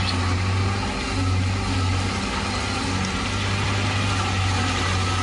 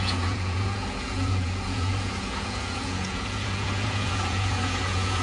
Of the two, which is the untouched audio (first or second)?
first